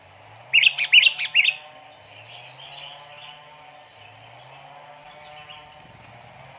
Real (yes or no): no